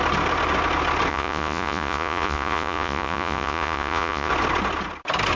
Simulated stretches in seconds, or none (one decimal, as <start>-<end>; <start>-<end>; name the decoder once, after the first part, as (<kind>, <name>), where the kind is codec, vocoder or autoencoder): 1.1-4.3 (vocoder, Vocos)